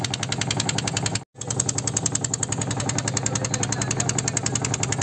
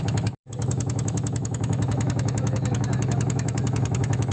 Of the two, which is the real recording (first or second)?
first